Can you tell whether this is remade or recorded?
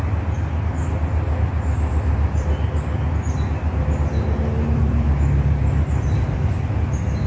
recorded